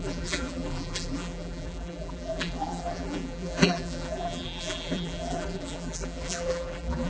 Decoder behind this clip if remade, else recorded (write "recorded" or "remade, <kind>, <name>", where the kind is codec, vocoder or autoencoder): remade, vocoder, BigVGAN v2